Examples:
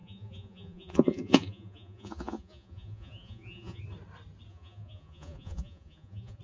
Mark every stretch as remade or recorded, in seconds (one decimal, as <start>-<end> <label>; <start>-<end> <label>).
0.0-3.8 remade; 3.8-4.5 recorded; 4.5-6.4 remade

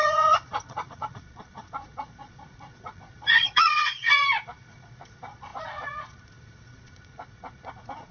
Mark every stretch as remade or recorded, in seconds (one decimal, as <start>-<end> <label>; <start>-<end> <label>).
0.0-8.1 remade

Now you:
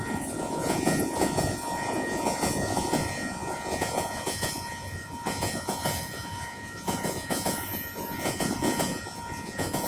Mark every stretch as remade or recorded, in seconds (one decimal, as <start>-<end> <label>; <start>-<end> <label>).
0.0-9.9 remade

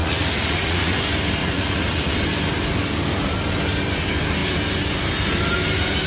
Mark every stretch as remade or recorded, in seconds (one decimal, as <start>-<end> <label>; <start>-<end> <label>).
0.0-0.9 remade; 0.9-1.4 recorded; 1.4-2.1 remade; 2.1-6.1 recorded

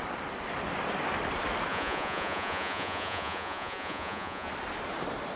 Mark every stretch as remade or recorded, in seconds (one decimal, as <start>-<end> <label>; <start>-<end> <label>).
0.0-1.7 recorded; 1.7-4.5 remade; 4.5-5.4 recorded